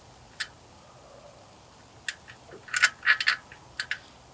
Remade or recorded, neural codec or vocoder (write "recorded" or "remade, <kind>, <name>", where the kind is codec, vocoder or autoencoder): recorded